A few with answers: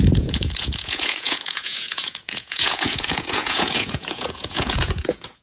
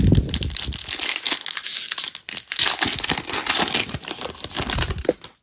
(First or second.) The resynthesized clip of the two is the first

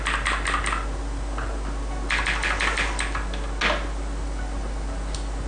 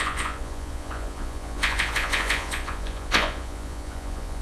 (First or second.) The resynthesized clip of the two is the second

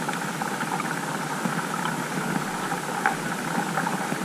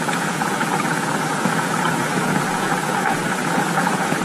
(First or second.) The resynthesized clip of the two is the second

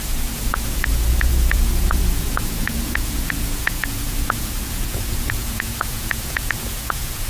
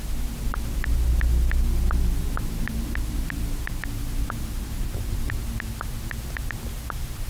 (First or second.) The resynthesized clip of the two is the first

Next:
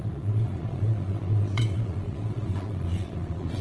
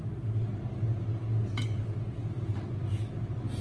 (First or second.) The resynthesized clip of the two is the first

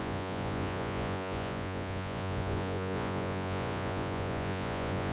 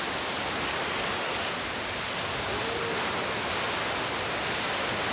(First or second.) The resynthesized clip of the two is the first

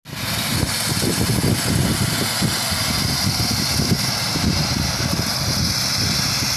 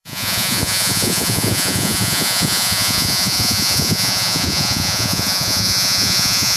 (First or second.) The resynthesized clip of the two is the second